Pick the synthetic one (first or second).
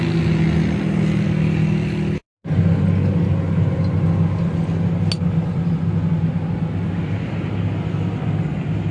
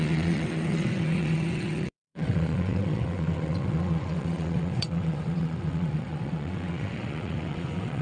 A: second